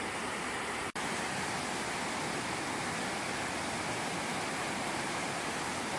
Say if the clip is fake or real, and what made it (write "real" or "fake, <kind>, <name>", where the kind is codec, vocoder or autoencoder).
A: real